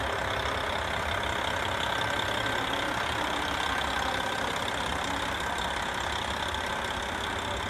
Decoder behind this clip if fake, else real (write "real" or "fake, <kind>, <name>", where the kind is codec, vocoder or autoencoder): real